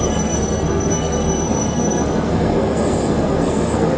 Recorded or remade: remade